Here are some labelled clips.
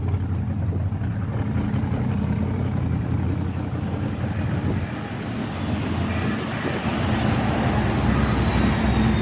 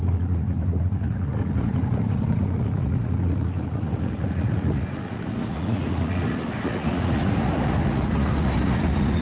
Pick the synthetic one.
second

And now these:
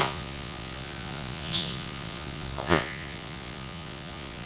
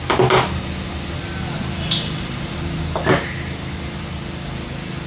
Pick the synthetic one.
first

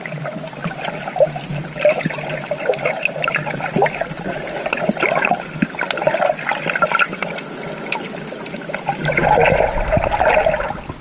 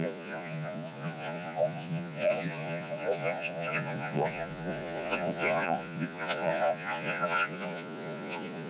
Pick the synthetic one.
second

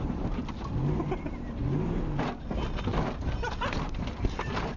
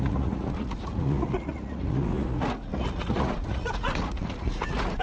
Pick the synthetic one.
second